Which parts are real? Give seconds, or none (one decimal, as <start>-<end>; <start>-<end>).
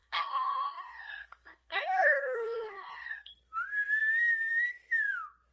3.3-5.5